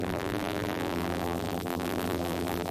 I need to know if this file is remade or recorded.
remade